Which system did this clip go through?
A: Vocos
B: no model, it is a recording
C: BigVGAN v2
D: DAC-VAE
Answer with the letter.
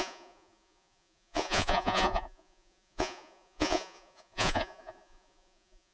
A